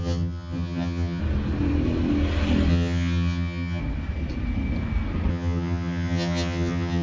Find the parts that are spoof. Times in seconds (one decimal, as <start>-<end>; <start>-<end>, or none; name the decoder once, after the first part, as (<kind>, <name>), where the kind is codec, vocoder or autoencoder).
0.0-1.2 (vocoder, HiFi-GAN); 2.7-3.8; 5.3-7.0